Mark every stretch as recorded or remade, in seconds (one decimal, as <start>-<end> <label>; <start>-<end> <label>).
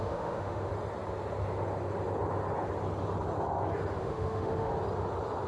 0.0-0.7 remade; 0.7-4.0 recorded; 4.0-4.7 remade; 4.7-5.5 recorded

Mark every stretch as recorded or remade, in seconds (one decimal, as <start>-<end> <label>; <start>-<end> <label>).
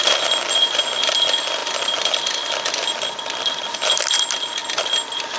0.0-5.4 recorded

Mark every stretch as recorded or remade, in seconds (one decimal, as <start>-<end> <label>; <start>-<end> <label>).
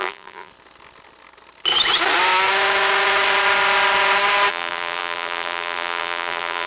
0.0-0.5 remade; 0.5-4.5 recorded; 4.5-6.7 remade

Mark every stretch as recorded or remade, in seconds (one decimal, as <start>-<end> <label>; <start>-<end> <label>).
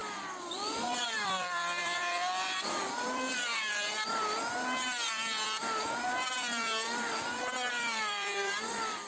0.0-1.0 recorded; 1.0-3.5 remade; 3.5-7.7 recorded; 7.7-9.1 remade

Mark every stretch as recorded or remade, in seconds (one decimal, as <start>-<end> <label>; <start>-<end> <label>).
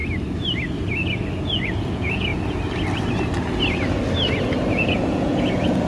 0.0-1.3 recorded; 1.3-2.3 remade; 2.3-4.7 recorded; 4.7-5.9 remade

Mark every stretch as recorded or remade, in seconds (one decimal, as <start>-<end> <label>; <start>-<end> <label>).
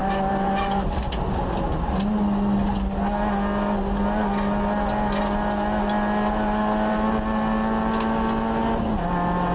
0.0-0.9 remade; 0.9-9.5 recorded